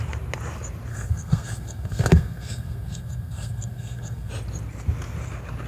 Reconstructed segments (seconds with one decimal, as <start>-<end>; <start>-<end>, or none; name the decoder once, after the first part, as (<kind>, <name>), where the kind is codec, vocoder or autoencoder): 0.9-4.3 (codec, SNAC)